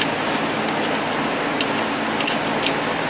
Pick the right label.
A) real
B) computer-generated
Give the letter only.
A